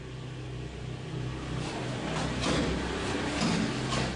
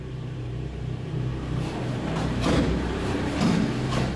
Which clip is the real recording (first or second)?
first